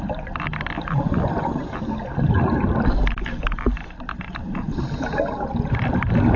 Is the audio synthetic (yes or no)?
no